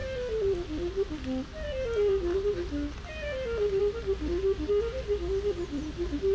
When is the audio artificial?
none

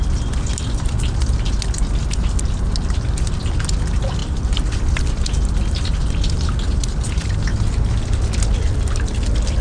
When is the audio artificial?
4.2-5.0 (vocoder, BigVGAN v2)

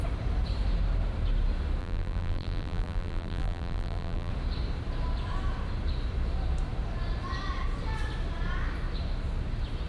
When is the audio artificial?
1.8-4.3 (vocoder, BigVGAN v2)

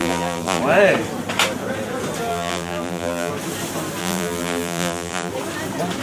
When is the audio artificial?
0.0-0.6 (vocoder, BigVGAN v2); 2.3-3.3; 4.0-5.3